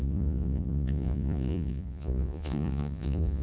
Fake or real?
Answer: fake